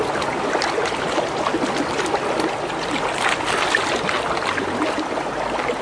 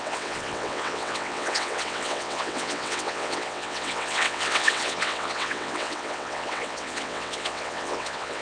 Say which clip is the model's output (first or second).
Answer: second